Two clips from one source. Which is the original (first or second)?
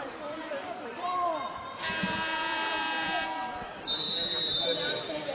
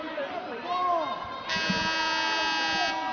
second